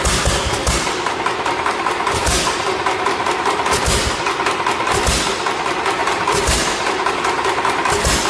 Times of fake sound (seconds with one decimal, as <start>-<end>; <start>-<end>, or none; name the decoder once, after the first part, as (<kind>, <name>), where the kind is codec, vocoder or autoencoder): 0.6-3.4 (vocoder, BigVGAN v2); 6.0-7.1